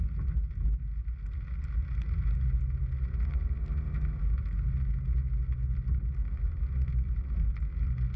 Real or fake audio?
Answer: real